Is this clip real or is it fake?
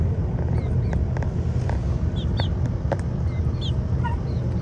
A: real